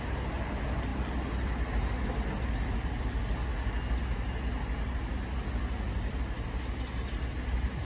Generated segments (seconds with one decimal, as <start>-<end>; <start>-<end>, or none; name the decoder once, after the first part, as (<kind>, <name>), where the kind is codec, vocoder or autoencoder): none